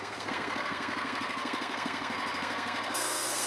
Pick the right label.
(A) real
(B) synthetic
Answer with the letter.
B